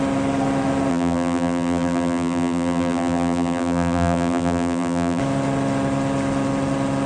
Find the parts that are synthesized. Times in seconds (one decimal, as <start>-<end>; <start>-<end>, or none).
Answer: 0.9-5.2

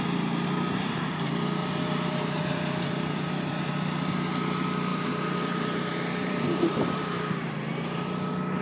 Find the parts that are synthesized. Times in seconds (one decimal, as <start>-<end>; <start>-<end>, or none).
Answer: 1.6-3.7; 4.9-8.1

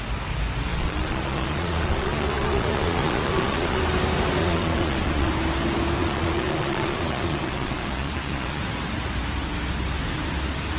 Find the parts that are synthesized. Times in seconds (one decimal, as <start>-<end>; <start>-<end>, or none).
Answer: 0.7-3.8; 4.4-5.3; 6.0-8.6